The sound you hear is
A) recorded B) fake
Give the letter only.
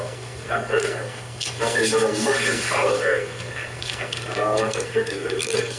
B